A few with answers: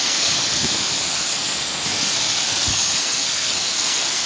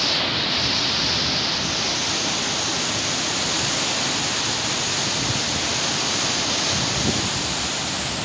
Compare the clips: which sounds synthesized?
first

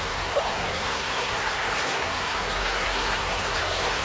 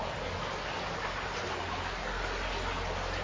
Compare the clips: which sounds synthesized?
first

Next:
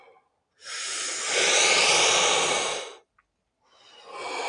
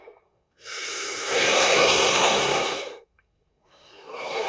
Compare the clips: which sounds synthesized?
second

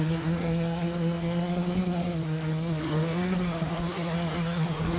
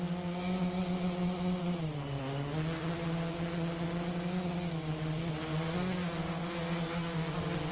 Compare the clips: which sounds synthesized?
first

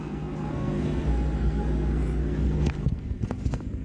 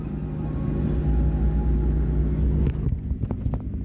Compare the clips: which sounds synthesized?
first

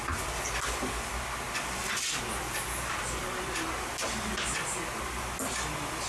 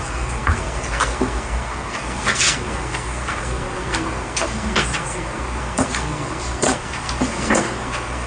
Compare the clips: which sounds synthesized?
second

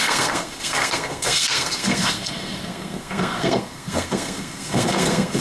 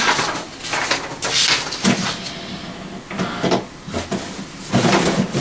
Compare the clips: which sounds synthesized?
first